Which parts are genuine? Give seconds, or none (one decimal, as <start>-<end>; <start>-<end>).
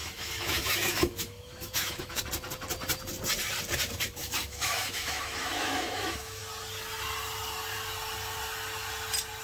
2.2-4.2; 6.4-9.4